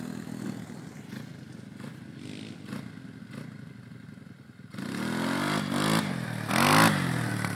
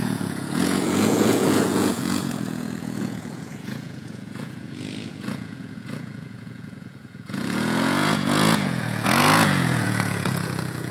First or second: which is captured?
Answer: first